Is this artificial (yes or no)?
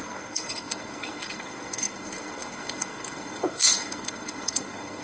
yes